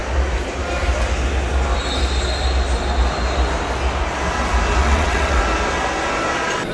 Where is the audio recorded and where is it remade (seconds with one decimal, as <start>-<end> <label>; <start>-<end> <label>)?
0.0-4.8 recorded; 4.8-5.4 remade; 5.4-6.7 recorded